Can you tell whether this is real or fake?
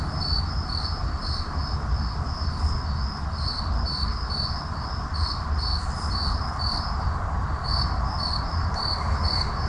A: real